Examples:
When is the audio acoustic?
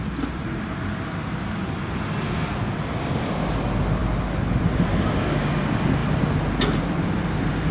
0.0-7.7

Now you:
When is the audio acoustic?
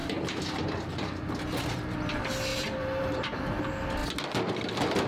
0.0-2.5; 3.4-5.1